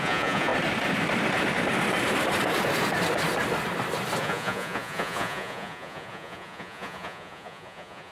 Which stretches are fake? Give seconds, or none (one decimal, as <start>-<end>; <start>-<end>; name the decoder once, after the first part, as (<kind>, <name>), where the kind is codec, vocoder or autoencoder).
0.0-0.5 (vocoder, Vocos); 4.2-8.1